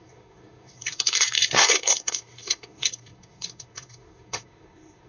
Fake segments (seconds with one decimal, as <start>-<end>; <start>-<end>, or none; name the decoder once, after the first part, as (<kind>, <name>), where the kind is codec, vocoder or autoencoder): 0.0-5.1 (codec, SNAC)